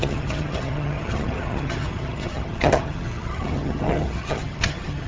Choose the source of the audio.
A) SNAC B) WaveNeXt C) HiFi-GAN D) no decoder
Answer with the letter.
C